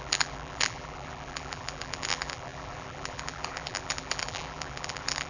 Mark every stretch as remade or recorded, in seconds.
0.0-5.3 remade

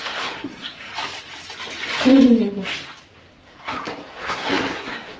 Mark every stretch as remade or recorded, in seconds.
0.0-0.9 remade; 0.9-3.3 recorded; 3.3-5.2 remade

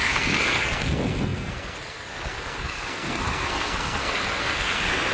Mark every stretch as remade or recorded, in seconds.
0.0-5.1 remade